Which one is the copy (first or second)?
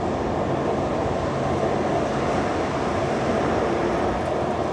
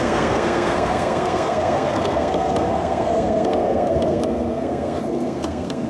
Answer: second